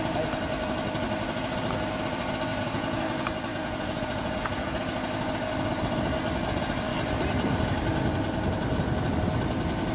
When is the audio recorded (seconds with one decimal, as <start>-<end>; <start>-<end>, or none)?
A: 0.0-2.5; 3.0-3.5; 4.8-9.9

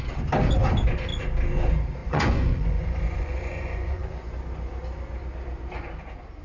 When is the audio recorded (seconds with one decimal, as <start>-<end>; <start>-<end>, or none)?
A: 0.0-2.0; 4.3-6.4

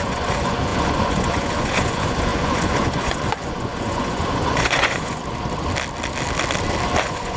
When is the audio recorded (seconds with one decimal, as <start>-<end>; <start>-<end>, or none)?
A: 5.2-7.0

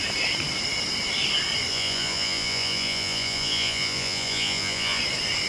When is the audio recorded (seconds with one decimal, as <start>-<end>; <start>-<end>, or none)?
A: 0.0-1.7; 5.0-5.5

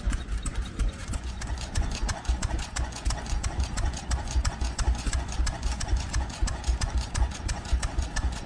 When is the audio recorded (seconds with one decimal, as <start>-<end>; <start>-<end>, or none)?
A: none